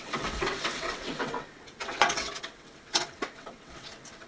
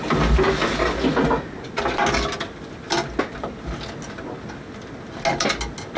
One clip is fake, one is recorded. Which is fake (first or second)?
first